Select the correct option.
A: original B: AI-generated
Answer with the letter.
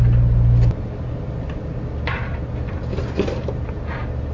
A